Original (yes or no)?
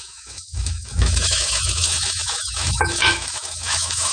no